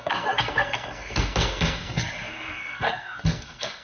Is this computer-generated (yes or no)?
yes